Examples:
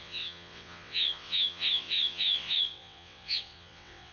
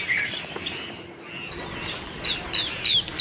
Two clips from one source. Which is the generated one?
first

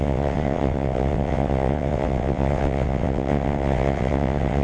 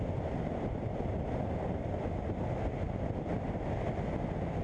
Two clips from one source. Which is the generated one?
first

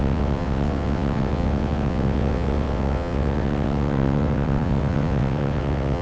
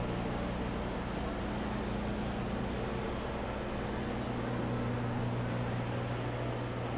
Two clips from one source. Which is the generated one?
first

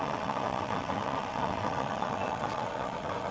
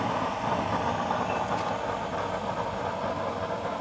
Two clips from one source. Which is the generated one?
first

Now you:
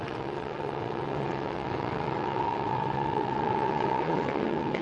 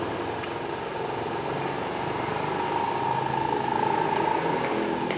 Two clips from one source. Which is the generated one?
first